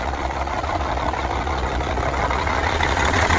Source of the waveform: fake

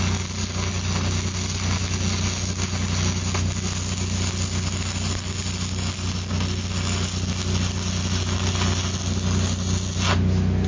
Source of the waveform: real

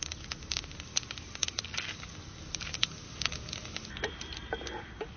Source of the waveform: real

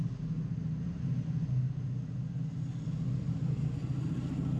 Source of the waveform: real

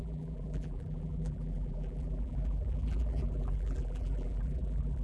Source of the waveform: fake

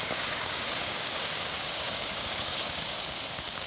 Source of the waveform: fake